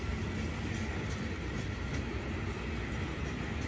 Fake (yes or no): no